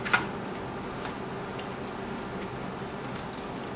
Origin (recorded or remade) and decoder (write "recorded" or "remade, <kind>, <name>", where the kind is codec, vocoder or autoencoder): recorded